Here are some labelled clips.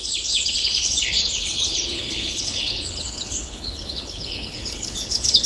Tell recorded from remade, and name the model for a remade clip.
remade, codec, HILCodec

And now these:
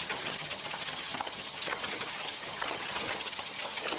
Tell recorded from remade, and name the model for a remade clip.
remade, vocoder, HiFi-GAN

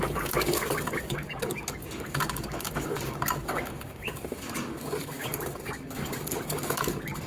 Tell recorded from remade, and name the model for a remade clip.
remade, codec, DAC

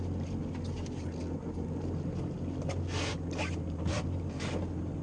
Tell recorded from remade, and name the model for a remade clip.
recorded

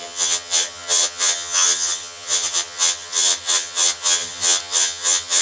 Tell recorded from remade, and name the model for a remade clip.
remade, vocoder, HiFi-GAN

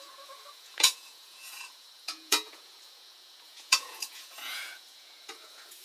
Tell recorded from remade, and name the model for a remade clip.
remade, vocoder, Vocos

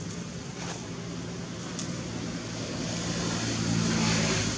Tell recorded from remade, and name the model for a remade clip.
recorded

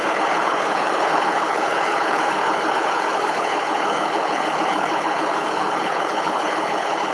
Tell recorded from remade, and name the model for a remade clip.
remade, codec, HILCodec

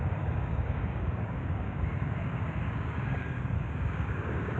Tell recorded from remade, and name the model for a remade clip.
remade, codec, DAC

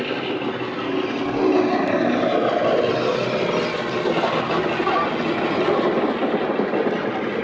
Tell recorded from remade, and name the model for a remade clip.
recorded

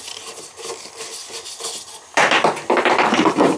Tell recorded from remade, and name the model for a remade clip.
recorded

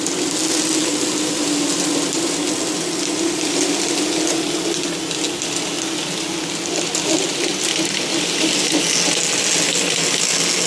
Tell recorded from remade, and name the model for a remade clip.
recorded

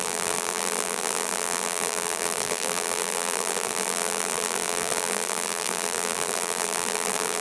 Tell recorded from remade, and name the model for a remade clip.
remade, vocoder, BigVGAN v2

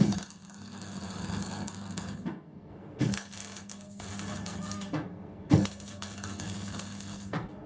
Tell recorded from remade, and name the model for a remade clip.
remade, codec, SNAC